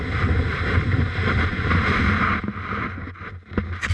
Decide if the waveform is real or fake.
real